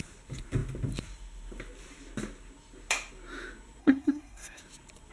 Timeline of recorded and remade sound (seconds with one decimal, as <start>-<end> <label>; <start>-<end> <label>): 0.0-3.8 recorded; 3.8-4.6 remade; 4.6-5.1 recorded